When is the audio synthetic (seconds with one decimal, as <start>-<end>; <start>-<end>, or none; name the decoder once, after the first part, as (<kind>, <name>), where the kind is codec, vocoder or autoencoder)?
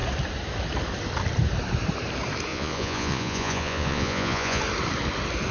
2.5-4.6 (vocoder, Vocos)